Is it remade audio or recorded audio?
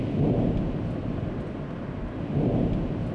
recorded